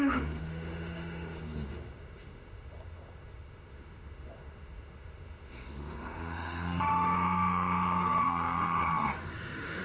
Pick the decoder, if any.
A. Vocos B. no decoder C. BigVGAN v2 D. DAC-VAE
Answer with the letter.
D